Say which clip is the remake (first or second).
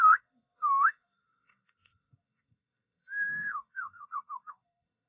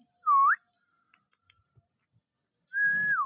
first